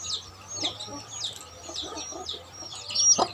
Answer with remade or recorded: recorded